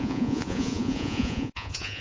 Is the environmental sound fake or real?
fake